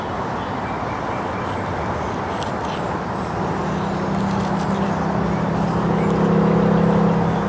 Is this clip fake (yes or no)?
no